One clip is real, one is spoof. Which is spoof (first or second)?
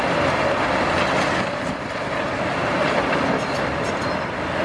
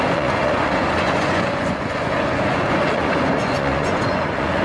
second